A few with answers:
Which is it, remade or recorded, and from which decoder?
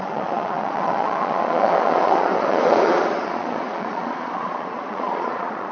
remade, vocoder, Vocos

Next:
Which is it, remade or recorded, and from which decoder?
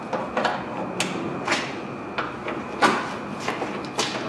recorded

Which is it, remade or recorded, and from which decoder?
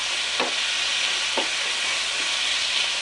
recorded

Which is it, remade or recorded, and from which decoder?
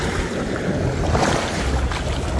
recorded